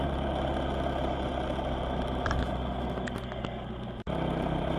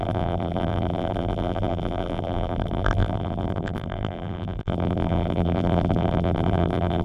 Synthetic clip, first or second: second